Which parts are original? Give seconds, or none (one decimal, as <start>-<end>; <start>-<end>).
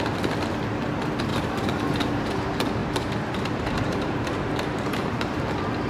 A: 0.0-1.3; 2.3-2.8; 5.4-5.9